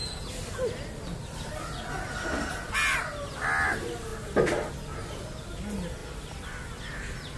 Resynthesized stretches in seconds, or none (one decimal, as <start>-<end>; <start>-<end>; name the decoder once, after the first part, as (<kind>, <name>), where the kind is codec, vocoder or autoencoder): none